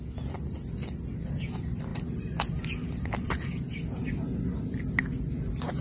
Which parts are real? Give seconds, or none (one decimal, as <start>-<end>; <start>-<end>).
0.0-5.8